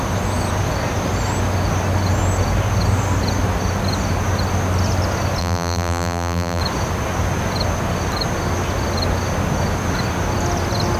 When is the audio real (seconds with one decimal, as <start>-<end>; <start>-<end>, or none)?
0.0-5.4; 6.6-11.0